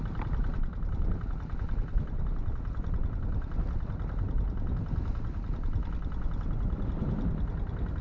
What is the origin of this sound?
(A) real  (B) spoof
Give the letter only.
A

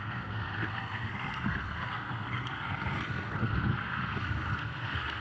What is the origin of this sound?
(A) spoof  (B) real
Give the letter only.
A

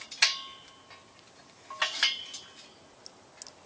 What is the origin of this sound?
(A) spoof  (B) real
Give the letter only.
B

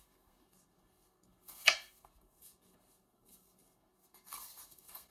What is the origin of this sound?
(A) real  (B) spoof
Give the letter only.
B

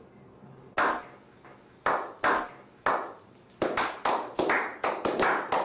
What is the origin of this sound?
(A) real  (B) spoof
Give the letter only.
A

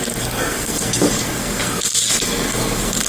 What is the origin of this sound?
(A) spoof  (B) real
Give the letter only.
A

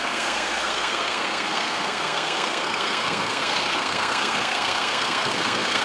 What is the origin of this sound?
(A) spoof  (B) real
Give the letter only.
A